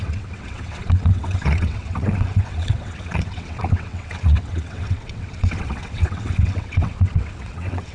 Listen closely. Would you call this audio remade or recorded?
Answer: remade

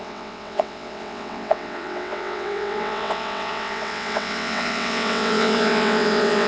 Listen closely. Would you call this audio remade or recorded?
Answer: remade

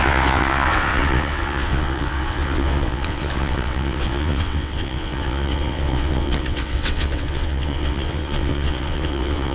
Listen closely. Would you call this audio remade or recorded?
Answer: remade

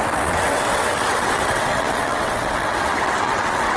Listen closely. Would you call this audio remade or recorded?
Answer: remade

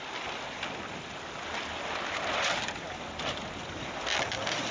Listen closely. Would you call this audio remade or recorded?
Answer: recorded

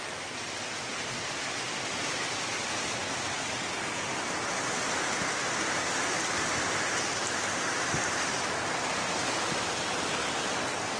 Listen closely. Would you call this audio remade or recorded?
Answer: recorded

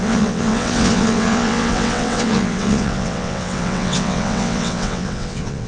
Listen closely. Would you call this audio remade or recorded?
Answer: remade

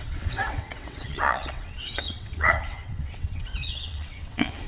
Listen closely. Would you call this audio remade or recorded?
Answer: remade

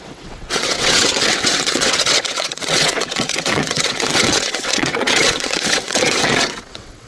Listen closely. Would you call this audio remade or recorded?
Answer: remade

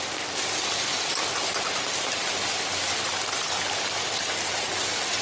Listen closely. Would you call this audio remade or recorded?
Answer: recorded